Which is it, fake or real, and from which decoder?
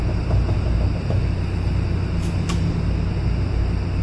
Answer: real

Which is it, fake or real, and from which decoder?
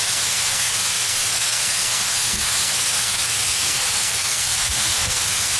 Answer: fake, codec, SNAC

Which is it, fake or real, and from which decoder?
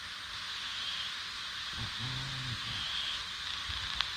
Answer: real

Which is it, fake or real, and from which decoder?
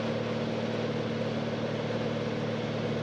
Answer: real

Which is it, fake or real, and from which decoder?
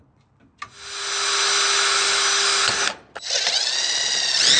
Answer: real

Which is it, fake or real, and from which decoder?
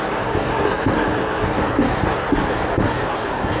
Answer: fake, codec, SNAC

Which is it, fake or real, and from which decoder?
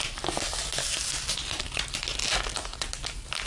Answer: real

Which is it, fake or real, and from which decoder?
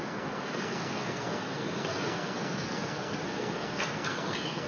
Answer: fake, codec, SNAC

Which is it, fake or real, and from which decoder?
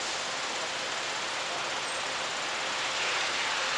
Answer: real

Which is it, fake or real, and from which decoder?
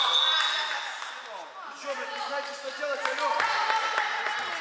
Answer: real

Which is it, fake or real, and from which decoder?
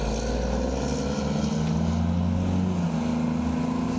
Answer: real